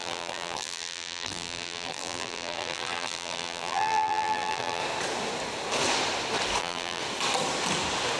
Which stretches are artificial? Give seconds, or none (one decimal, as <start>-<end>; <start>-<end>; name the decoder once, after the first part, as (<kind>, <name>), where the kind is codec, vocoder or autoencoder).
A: 0.0-4.8 (vocoder, BigVGAN v2); 6.6-7.0

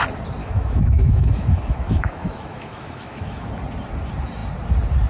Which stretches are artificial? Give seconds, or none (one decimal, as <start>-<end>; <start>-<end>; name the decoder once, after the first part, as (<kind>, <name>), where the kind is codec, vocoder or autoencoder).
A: 0.4-3.5 (autoencoder, DAC-VAE)